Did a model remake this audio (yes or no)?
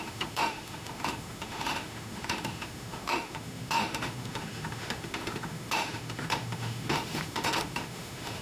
yes